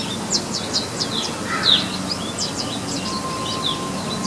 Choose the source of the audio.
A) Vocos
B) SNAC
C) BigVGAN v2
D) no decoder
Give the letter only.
D